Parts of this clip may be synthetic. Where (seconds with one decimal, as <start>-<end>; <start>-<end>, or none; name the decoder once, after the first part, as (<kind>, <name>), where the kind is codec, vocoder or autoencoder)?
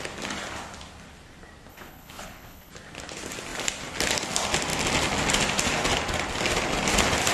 1.7-2.7 (codec, HILCodec)